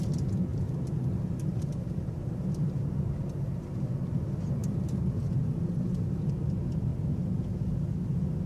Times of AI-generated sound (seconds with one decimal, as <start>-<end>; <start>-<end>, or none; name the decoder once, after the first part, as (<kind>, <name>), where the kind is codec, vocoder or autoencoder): 0.5-2.8 (vocoder, BigVGAN v2); 4.6-6.3

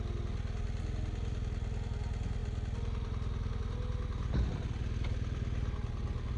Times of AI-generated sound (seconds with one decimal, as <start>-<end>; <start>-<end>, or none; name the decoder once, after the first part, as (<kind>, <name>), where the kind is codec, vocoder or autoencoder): none

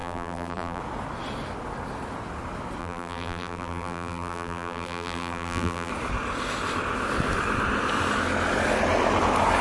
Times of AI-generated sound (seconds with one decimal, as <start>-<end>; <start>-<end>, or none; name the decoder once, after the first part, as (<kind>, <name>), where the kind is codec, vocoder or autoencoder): 0.0-0.8 (vocoder, BigVGAN v2); 2.8-5.9

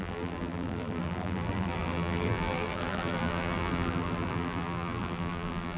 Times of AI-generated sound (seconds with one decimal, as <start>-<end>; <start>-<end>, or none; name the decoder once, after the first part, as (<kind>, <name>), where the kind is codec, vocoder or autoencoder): 0.0-5.8 (vocoder, BigVGAN v2)